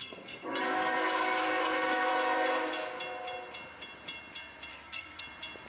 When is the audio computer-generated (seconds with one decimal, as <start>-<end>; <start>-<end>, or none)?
0.0-2.1; 4.7-5.2